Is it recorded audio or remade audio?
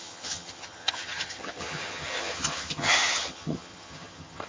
remade